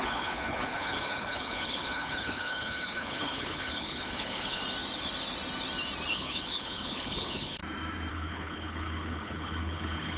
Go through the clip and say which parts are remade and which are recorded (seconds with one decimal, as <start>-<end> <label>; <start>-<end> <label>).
0.0-4.6 remade; 4.6-6.1 recorded; 6.1-7.6 remade; 7.6-8.1 recorded; 8.1-10.2 remade